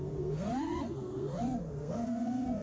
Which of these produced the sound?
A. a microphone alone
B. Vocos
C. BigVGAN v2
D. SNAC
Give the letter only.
D